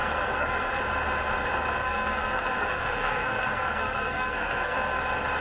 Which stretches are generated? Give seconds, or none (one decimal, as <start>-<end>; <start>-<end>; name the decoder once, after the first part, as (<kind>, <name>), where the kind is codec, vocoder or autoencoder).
0.0-0.8 (codec, SNAC); 1.8-5.0